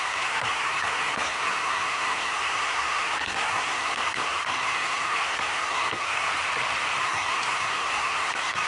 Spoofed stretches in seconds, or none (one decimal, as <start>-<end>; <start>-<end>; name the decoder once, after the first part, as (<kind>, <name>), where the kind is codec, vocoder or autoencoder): 0.0-6.3 (codec, SNAC); 7.0-8.7